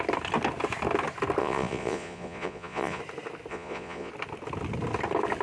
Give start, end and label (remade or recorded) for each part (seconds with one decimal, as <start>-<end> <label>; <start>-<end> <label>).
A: 0.0-1.4 recorded; 1.4-3.0 remade; 3.0-3.5 recorded; 3.5-4.1 remade; 4.1-5.4 recorded